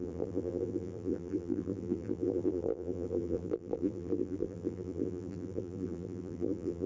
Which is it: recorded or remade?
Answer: remade